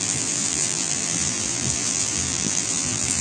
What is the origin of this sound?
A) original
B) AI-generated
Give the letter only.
B